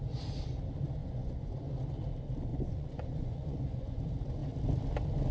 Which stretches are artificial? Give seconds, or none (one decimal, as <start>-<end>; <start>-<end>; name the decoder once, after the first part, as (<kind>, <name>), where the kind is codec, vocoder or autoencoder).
1.0-1.6 (vocoder, Vocos); 2.5-4.0